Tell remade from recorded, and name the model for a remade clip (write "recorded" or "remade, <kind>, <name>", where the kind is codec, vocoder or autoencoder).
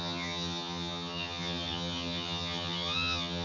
remade, vocoder, HiFi-GAN